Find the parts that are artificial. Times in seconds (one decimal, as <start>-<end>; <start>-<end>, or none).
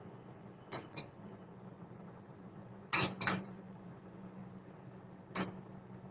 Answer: 0.0-2.9; 3.4-4.4